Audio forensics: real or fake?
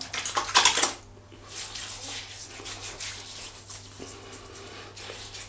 real